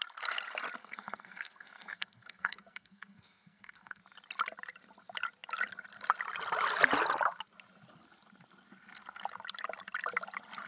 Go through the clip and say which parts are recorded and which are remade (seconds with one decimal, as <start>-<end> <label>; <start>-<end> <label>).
0.0-0.8 recorded; 0.8-4.0 remade; 4.0-10.7 recorded